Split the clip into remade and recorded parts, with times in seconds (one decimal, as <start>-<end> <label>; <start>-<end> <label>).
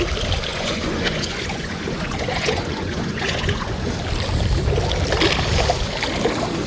0.0-0.5 recorded; 0.5-3.8 remade; 3.8-6.7 recorded